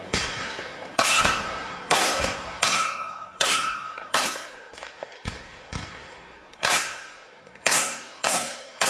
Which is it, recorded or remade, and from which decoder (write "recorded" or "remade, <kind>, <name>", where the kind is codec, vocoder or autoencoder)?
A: remade, codec, SNAC